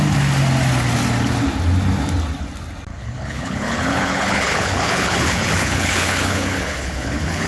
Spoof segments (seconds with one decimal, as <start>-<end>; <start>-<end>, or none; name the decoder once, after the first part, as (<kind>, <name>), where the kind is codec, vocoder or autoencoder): 2.9-7.5 (codec, HILCodec)